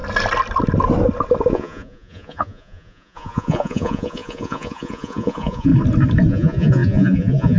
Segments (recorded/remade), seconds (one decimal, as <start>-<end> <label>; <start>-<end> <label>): 0.0-1.5 recorded; 1.5-5.7 remade; 5.7-6.3 recorded; 6.3-7.6 remade